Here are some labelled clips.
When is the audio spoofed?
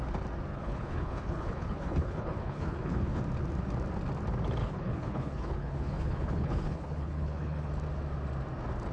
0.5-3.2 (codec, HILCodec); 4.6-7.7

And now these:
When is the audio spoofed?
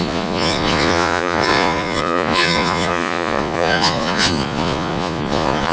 0.0-5.7 (vocoder, Vocos)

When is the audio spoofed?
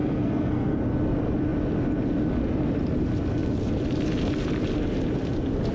0.0-0.8 (codec, SNAC)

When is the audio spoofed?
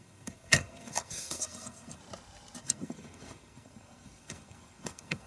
0.0-2.0 (codec, SNAC); 2.6-5.3